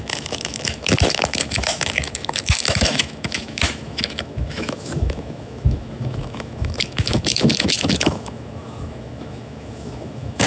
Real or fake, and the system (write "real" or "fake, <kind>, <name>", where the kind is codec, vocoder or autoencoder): fake, autoencoder, DAC-VAE